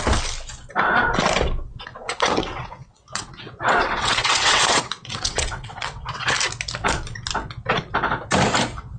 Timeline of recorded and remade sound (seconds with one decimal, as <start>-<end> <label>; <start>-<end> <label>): 0.0-1.9 recorded; 1.9-6.3 remade; 6.3-9.0 recorded